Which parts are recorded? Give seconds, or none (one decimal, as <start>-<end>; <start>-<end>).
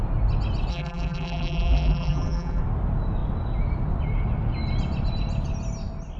0.0-0.7; 2.6-6.2